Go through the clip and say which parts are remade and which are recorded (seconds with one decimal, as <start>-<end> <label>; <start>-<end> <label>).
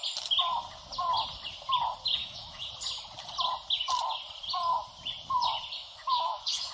0.0-2.2 recorded; 2.2-2.7 remade; 2.7-5.8 recorded; 5.8-6.7 remade